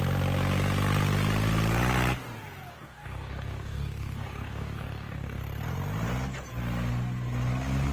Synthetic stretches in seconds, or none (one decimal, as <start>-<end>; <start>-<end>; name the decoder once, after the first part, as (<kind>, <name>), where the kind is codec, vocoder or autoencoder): 2.7-5.4 (codec, DAC)